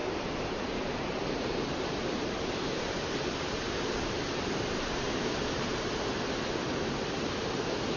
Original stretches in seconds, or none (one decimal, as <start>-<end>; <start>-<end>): none